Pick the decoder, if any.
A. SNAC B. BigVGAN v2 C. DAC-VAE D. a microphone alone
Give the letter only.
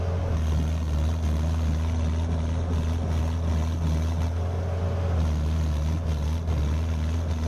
D